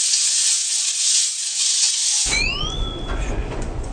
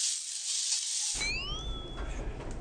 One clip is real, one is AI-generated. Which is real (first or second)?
second